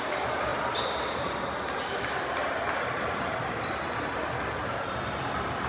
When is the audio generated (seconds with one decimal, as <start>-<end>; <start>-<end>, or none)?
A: none